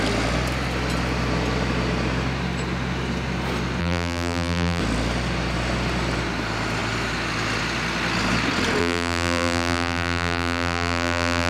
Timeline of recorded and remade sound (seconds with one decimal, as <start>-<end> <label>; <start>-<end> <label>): 0.0-3.8 recorded; 3.8-4.8 remade; 4.8-8.8 recorded; 8.8-11.5 remade